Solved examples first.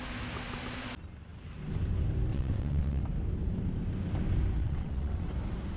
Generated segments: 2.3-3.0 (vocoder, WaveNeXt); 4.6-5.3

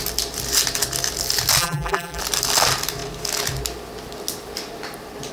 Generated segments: 1.6-2.2 (vocoder, BigVGAN v2)

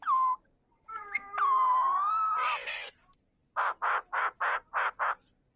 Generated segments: 0.0-5.6 (vocoder, BigVGAN v2)